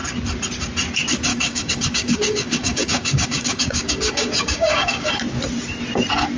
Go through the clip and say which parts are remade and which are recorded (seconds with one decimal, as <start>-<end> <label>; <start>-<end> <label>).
0.0-1.3 recorded; 1.3-5.1 remade; 5.1-6.4 recorded